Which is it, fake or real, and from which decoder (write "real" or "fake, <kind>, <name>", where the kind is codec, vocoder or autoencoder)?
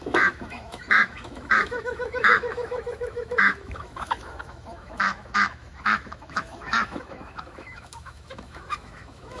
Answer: fake, autoencoder, DAC-VAE